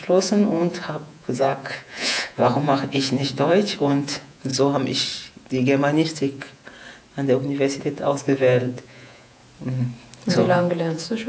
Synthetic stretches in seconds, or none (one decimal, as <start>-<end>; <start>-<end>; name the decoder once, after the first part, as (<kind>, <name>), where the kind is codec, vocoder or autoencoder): 0.0-4.5 (vocoder, Vocos); 6.1-6.6; 7.8-9.4; 10.3-11.3